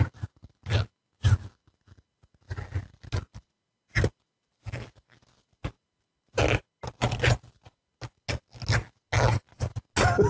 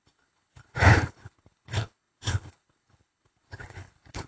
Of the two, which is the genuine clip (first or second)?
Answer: first